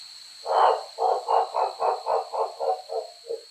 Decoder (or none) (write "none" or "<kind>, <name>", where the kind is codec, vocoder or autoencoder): none